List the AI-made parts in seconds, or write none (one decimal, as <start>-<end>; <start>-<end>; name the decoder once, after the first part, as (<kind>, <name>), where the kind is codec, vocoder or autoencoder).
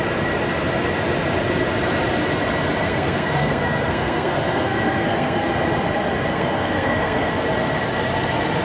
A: 2.8-5.5 (codec, SNAC); 6.3-7.3